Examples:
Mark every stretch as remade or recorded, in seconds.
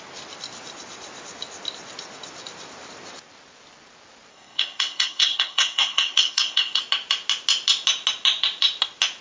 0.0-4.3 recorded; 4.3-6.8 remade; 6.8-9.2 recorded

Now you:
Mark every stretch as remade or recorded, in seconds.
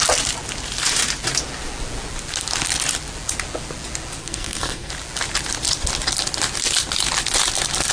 0.0-4.2 recorded; 4.2-4.9 remade; 4.9-7.9 recorded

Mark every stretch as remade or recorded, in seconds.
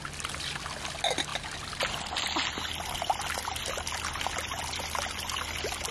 0.0-5.9 recorded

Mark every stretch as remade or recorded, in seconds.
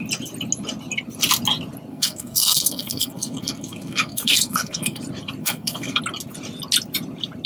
0.0-1.9 recorded; 1.9-5.0 remade; 5.0-5.4 recorded; 5.4-6.0 remade; 6.0-7.5 recorded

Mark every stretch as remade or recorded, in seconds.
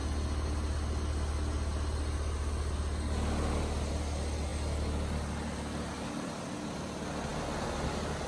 0.0-8.3 recorded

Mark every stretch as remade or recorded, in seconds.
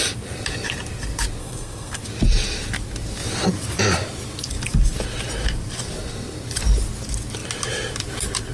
0.0-1.4 recorded; 1.4-2.0 remade; 2.0-8.5 recorded